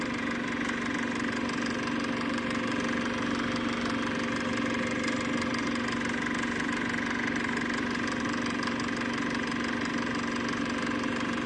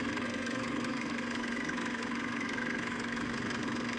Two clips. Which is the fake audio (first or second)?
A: second